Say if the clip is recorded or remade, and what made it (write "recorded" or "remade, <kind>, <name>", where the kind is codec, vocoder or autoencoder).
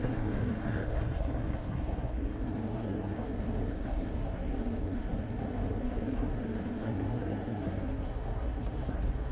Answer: remade, codec, SNAC